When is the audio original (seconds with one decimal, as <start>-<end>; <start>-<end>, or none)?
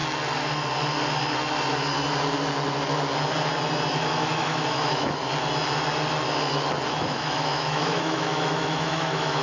0.0-3.9; 5.2-6.9